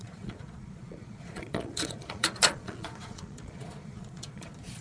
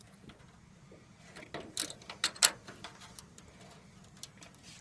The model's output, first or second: first